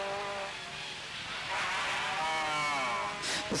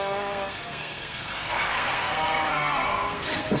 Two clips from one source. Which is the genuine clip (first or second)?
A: first